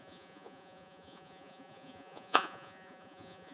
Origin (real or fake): fake